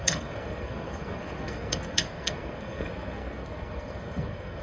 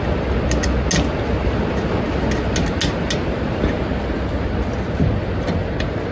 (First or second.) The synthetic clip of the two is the first